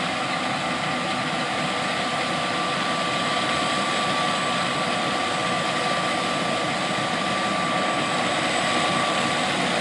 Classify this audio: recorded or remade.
recorded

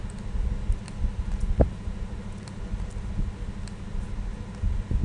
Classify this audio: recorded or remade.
recorded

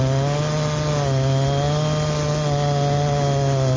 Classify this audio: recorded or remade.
recorded